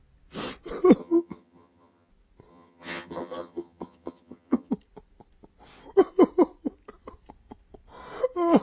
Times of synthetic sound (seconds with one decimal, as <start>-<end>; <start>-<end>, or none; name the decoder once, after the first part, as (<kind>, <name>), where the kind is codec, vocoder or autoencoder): 1.0-2.1 (vocoder, HiFi-GAN); 2.5-4.7